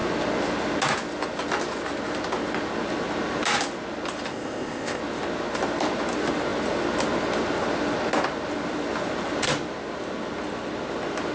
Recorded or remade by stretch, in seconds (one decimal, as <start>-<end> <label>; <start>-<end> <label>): 0.0-4.3 recorded; 4.3-5.0 remade; 5.0-11.3 recorded